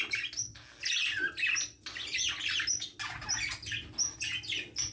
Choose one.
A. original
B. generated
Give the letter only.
A